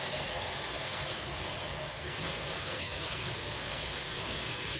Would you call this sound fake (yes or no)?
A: yes